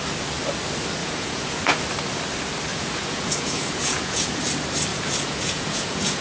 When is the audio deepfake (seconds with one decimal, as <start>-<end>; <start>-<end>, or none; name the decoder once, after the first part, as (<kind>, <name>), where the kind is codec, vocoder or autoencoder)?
1.0-1.6 (vocoder, Vocos); 2.7-4.4; 4.9-6.2